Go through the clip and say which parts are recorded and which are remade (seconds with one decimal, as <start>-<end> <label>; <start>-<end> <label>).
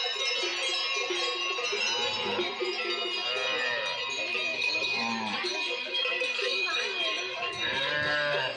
0.0-4.5 recorded; 4.5-8.6 remade